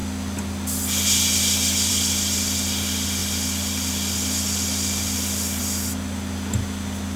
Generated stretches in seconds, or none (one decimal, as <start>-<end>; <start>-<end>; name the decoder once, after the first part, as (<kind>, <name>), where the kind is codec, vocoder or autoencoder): none